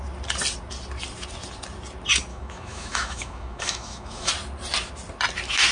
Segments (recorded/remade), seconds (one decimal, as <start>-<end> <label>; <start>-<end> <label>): 0.0-2.3 recorded; 2.3-4.3 remade; 4.3-5.7 recorded